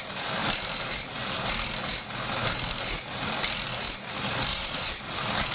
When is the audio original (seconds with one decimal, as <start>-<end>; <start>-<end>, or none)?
0.0-4.5; 5.0-5.5